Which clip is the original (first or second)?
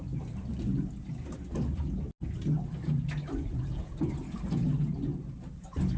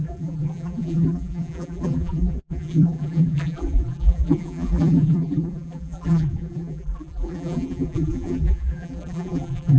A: first